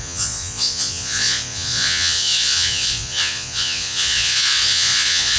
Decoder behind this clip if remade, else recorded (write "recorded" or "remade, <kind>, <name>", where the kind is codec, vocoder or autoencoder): remade, vocoder, Vocos